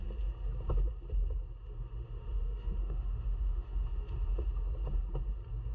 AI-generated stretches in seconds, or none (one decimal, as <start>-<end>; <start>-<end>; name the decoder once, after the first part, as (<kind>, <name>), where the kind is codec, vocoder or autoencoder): 1.6-4.5 (autoencoder, DAC-VAE)